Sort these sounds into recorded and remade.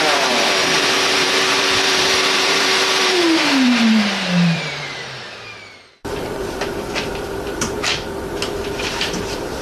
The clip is remade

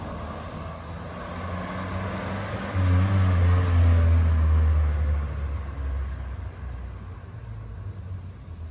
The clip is recorded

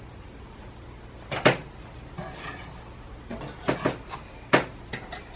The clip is recorded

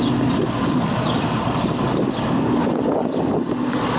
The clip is remade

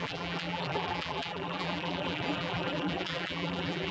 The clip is remade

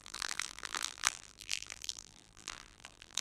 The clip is remade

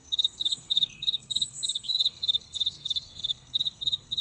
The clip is remade